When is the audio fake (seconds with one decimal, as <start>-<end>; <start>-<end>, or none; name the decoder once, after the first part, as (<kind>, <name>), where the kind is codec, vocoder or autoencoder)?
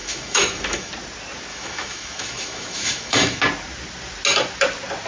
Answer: 0.0-0.9 (autoencoder, DAC-VAE); 1.5-3.4